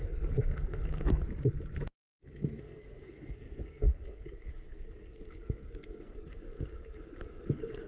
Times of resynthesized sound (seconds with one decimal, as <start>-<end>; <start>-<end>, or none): 0.0-1.2; 2.6-7.9

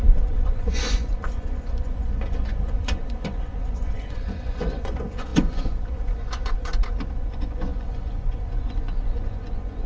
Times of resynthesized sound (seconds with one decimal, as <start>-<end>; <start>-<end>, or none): 0.0-6.7; 7.2-9.9

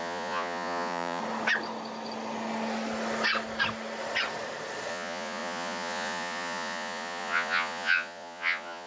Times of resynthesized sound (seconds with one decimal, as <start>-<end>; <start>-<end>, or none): 0.0-1.2; 4.9-8.9

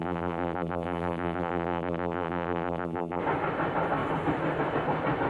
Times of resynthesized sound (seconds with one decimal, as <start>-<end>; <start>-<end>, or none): 0.0-3.2